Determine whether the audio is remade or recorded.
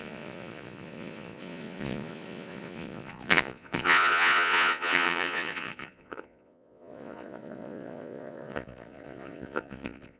remade